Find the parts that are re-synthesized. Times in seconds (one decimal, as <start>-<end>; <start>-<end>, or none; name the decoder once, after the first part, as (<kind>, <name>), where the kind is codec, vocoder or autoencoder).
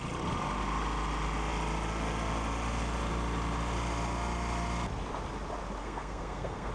5.8-6.7 (codec, SNAC)